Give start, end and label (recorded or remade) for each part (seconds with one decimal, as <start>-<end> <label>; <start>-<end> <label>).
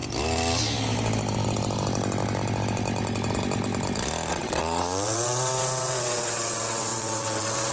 0.0-4.3 recorded; 4.3-7.7 remade